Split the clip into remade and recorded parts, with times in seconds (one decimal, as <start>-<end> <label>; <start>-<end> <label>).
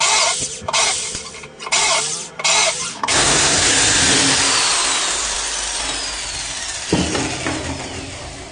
0.0-2.9 recorded; 2.9-3.7 remade; 3.7-8.5 recorded